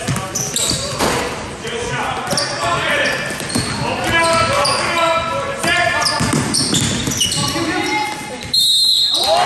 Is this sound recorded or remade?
recorded